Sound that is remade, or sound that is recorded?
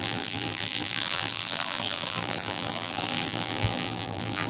remade